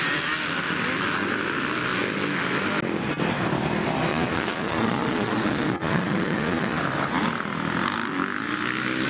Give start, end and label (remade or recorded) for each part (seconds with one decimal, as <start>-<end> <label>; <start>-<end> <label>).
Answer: 0.0-4.1 recorded; 4.1-6.8 remade; 6.8-9.1 recorded